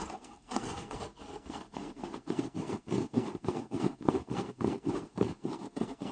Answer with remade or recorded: remade